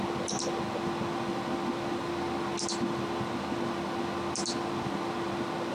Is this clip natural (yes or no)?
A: yes